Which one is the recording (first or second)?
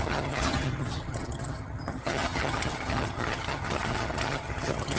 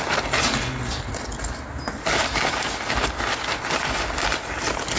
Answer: second